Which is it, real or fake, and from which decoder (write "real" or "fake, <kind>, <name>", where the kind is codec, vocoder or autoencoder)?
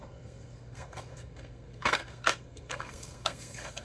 fake, codec, SNAC